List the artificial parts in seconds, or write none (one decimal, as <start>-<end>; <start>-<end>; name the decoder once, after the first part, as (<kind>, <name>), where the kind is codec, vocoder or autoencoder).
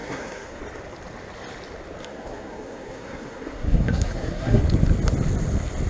0.0-0.6 (codec, SNAC); 2.0-4.6